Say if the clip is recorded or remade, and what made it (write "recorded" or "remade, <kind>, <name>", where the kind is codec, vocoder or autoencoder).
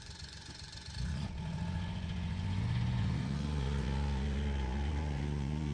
remade, vocoder, Vocos